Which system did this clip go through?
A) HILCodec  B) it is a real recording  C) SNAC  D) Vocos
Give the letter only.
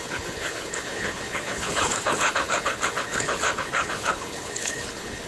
A